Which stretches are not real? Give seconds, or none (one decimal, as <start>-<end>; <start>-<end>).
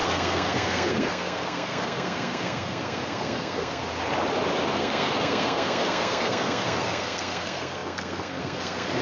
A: 0.0-3.8; 4.7-9.0